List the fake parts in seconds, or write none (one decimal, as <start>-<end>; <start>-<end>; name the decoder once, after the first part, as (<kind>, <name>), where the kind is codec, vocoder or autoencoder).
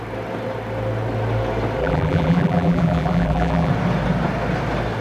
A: 1.8-3.7 (vocoder, BigVGAN v2)